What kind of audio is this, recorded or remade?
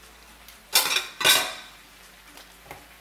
recorded